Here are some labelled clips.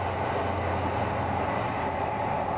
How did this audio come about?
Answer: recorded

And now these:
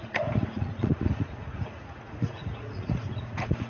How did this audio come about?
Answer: remade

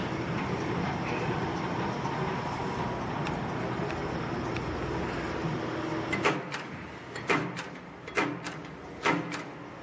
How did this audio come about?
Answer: recorded